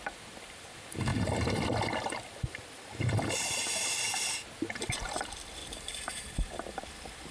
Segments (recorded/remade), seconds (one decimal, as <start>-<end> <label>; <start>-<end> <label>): 0.0-5.6 recorded; 5.6-6.8 remade; 6.8-7.3 recorded